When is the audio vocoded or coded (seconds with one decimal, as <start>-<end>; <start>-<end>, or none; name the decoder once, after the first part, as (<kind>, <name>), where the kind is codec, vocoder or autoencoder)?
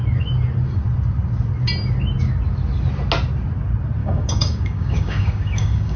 4.0-6.0 (codec, DAC)